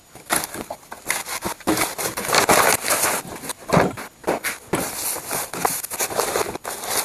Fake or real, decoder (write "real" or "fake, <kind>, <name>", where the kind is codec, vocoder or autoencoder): real